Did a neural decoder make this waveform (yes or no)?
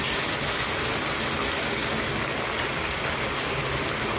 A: no